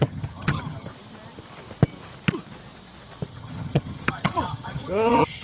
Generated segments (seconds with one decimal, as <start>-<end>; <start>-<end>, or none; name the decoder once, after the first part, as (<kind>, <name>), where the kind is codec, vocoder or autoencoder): 0.0-0.9 (vocoder, HiFi-GAN); 3.3-5.4